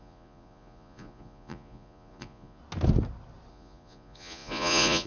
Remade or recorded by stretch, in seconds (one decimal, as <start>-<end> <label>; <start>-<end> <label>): 0.0-2.6 remade; 2.6-3.5 recorded; 3.5-5.1 remade